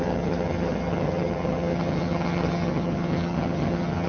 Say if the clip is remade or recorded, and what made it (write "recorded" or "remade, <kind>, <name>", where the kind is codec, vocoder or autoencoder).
remade, vocoder, HiFi-GAN